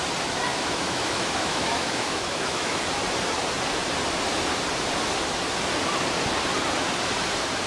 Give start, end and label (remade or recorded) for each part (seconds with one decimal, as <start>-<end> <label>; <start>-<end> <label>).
0.0-0.5 recorded; 0.5-2.8 remade; 2.8-7.7 recorded